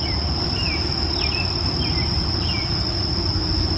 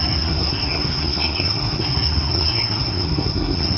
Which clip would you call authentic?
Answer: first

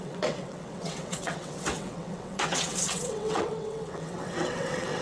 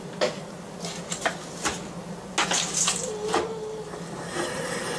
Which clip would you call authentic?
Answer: second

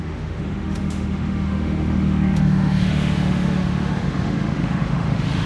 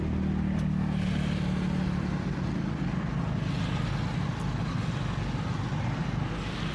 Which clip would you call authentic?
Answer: second